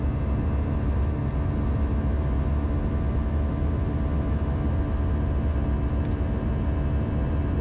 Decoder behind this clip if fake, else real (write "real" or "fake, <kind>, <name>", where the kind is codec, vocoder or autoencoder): real